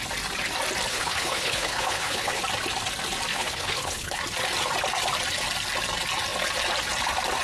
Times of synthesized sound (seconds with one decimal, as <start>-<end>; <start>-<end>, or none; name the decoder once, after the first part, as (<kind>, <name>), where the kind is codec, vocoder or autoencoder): 0.9-2.4 (codec, HILCodec); 3.3-4.2

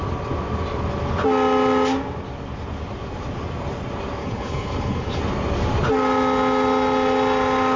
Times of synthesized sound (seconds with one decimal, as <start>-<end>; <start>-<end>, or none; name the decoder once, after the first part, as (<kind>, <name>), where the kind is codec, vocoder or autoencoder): 4.2-5.2 (codec, HILCodec)

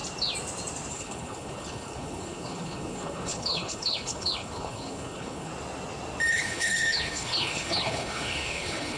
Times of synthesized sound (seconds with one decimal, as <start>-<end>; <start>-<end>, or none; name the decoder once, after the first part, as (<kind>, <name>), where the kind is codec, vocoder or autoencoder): 0.9-5.5 (codec, HILCodec); 6.3-9.0

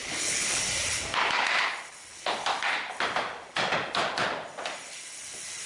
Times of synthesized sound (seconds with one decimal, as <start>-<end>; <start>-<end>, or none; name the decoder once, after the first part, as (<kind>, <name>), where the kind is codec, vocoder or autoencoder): 0.0-0.6 (codec, HILCodec)

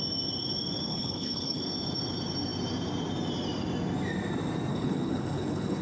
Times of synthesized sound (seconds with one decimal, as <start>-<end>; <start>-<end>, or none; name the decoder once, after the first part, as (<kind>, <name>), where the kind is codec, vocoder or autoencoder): 0.9-1.6 (codec, HILCodec); 4.7-5.8

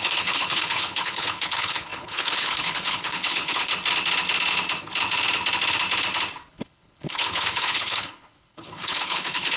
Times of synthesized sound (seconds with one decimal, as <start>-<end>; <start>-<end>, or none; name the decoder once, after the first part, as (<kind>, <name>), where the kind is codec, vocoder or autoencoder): 0.0-3.7 (codec, HILCodec); 6.5-9.6

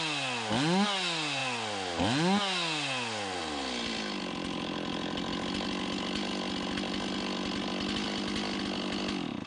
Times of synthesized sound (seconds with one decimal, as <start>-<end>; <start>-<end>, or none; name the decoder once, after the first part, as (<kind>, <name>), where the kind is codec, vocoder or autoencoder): none